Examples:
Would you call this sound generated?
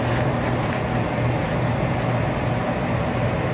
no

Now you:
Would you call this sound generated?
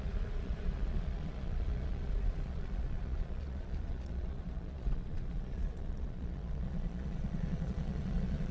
yes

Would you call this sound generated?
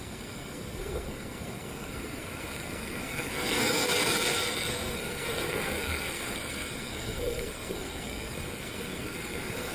yes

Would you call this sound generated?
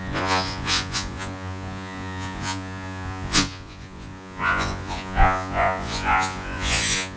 yes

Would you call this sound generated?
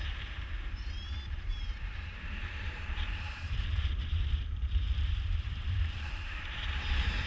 yes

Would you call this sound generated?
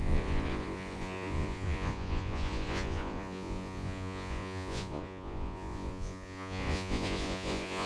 yes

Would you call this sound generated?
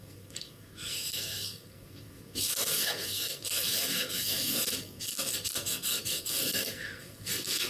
yes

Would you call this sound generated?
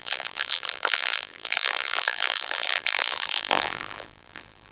yes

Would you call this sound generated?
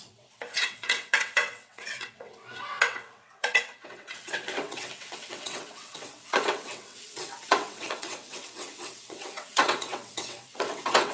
yes